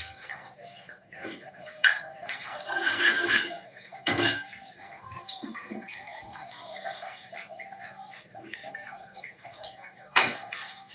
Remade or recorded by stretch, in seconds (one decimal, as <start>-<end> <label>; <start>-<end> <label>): 0.0-10.9 remade